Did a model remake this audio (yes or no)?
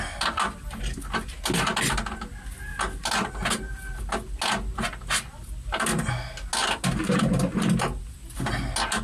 no